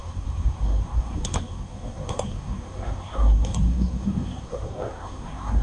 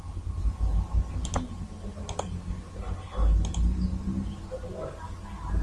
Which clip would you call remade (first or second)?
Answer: first